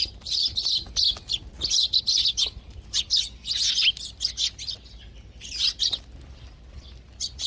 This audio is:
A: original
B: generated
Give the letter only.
A